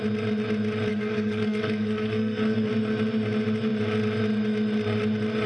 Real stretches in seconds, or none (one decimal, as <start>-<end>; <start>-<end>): 0.0-0.9; 2.7-5.5